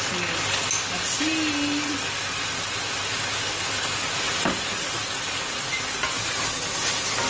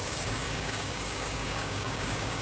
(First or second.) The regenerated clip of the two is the second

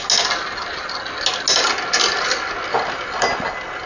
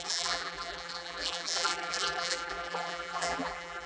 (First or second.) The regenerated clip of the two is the second